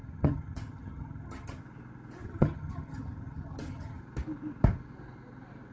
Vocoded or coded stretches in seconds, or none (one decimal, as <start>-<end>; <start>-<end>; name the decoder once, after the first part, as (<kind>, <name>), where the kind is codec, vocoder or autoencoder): 0.0-1.6 (vocoder, HiFi-GAN); 2.2-4.0